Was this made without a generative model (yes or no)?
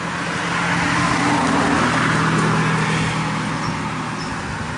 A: yes